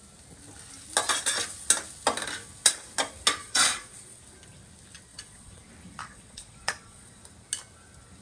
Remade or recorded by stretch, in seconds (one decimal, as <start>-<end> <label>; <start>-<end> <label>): 0.0-3.4 recorded; 3.4-4.2 remade; 4.2-5.1 recorded; 5.1-5.6 remade; 5.6-6.0 recorded; 6.0-7.2 remade; 7.2-8.2 recorded